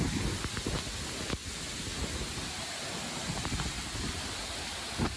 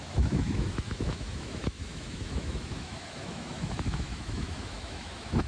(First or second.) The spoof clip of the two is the second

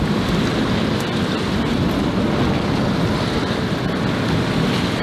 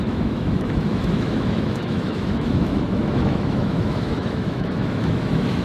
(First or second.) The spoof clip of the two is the second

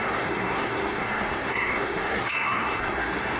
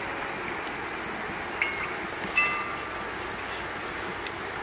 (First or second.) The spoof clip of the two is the first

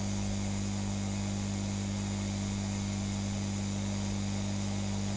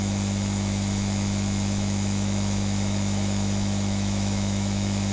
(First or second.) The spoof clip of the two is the second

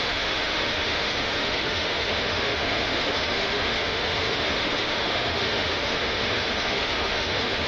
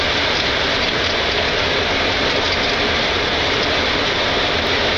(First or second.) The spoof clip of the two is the first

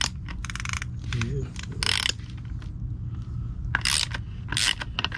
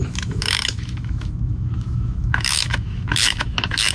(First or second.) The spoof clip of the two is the second